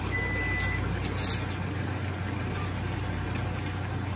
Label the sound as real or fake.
real